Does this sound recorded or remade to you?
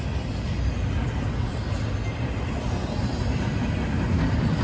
recorded